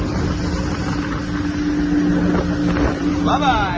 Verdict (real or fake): real